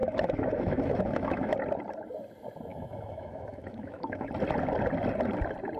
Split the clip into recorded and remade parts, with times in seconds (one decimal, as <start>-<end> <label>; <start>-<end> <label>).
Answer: 0.0-1.5 remade; 1.5-2.7 recorded; 2.7-4.3 remade; 4.3-5.8 recorded

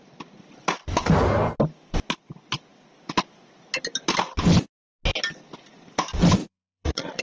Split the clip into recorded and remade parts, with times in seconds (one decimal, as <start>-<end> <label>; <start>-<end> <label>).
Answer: 0.0-6.4 recorded; 6.4-7.2 remade

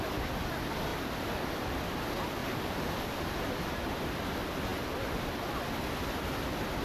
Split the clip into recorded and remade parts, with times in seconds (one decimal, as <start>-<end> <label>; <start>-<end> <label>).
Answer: 0.0-0.9 recorded; 0.9-1.8 remade; 1.8-2.4 recorded; 2.4-3.2 remade; 3.2-6.8 recorded